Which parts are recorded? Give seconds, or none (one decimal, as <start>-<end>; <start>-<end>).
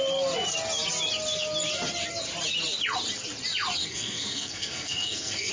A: 0.0-3.8